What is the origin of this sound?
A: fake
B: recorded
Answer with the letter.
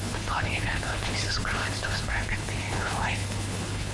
A